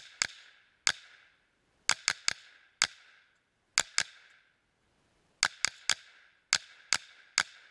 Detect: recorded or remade recorded